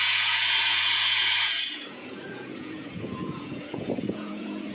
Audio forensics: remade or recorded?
remade